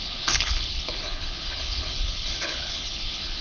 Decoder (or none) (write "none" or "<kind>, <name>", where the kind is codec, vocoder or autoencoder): codec, HILCodec